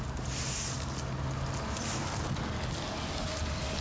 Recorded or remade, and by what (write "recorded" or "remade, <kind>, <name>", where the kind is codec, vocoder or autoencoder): recorded